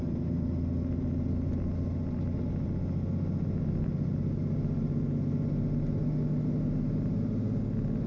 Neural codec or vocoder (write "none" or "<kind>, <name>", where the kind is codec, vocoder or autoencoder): none